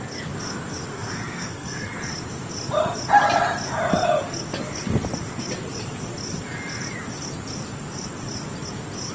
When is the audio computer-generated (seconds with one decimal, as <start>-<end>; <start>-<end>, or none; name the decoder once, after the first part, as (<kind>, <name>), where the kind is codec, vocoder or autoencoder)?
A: 0.9-2.0 (codec, SNAC)